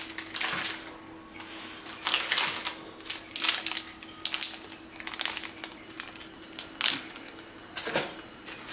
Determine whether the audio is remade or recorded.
recorded